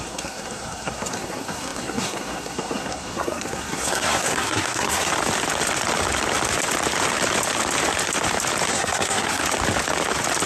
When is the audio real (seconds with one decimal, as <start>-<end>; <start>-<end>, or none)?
5.1-8.7; 9.4-10.5